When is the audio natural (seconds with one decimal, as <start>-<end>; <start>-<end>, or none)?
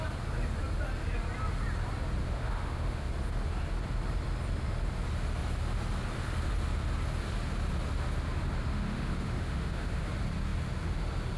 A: 0.0-2.2; 3.1-8.7; 10.1-11.4